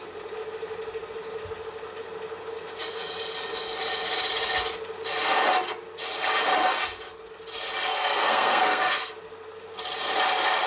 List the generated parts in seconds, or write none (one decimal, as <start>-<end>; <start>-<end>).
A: 7.9-9.1